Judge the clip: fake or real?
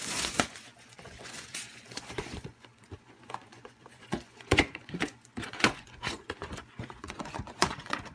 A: fake